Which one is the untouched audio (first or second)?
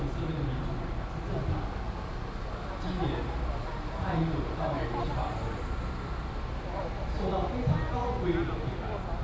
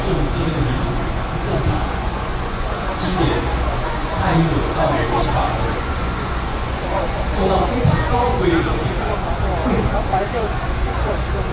first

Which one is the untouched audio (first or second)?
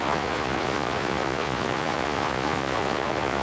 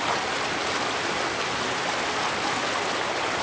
second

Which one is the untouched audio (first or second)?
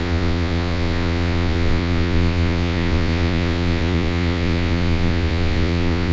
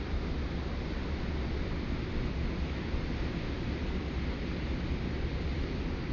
second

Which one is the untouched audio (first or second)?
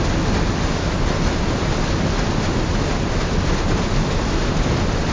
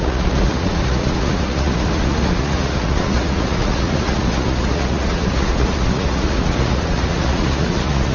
first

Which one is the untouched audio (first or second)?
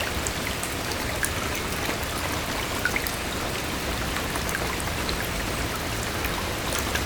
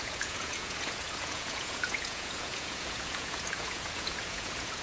first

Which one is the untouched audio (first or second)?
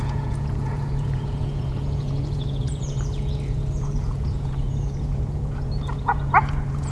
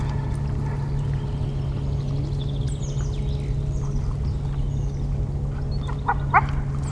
second